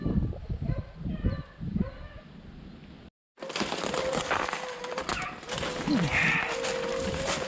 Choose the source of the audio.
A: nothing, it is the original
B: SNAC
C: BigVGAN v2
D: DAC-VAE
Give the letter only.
A